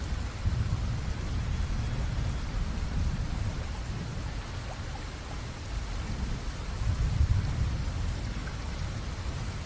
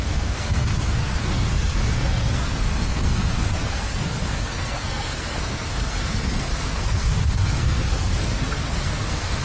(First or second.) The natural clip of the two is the first